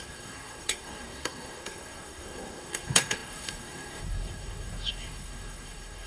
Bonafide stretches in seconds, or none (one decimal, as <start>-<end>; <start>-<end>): none